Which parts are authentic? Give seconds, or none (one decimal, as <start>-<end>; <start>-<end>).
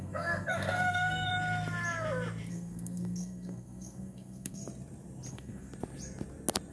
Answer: 1.3-2.5; 4.6-5.3; 5.7-6.7